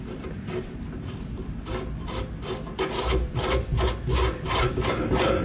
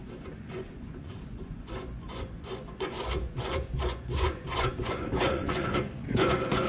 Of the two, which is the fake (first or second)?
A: second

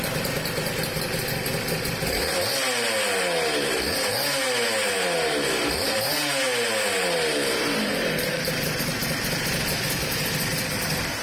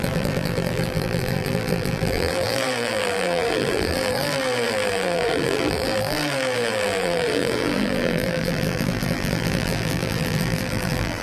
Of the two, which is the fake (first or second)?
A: second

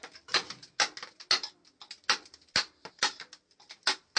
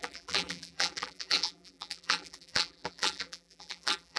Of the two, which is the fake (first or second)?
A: second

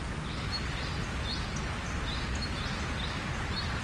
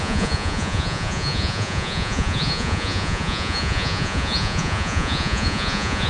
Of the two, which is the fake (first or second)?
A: second